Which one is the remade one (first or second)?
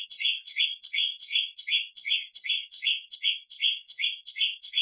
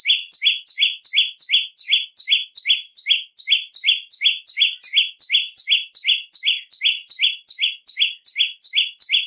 first